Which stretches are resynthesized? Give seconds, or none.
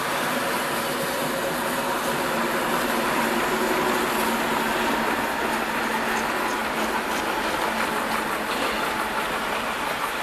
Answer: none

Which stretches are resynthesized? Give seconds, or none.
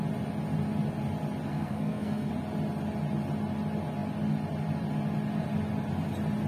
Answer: 1.5-2.3 (codec, SNAC)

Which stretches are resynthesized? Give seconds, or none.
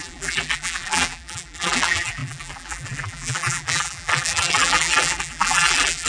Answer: 0.0-6.1 (vocoder, BigVGAN v2)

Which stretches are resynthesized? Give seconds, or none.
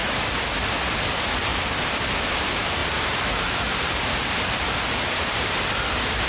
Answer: 1.5-2.1 (vocoder, BigVGAN v2); 2.8-5.7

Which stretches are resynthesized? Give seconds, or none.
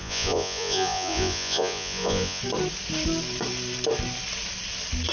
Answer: 0.0-2.4 (vocoder, Vocos)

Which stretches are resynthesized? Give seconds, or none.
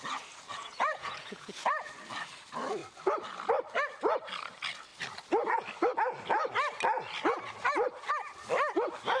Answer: 0.5-1.9 (vocoder, Vocos)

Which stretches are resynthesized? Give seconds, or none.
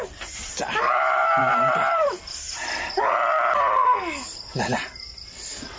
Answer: 1.4-3.1 (vocoder, BigVGAN v2)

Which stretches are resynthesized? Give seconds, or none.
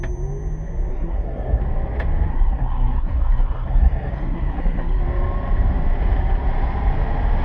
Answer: 0.9-1.6 (codec, SNAC); 2.3-5.0